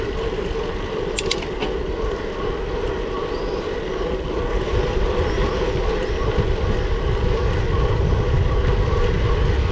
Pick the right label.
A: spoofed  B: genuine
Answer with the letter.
B